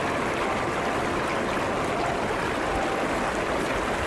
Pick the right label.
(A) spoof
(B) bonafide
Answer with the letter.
B